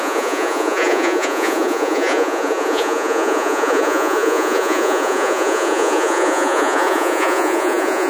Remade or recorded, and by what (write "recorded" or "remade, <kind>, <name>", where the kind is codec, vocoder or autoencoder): remade, vocoder, Vocos